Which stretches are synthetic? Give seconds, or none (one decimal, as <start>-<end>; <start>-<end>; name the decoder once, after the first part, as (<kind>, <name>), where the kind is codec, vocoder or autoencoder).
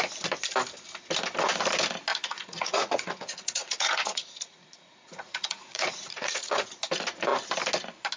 2.1-6.7 (vocoder, Vocos)